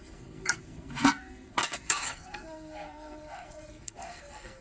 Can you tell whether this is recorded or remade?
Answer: remade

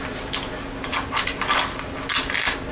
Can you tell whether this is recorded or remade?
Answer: recorded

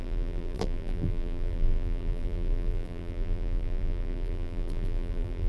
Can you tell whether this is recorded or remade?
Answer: remade